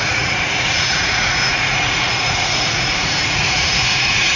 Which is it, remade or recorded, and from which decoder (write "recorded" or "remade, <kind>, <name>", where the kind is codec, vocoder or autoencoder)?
remade, vocoder, Vocos